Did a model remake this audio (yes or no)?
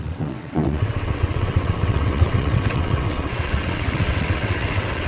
yes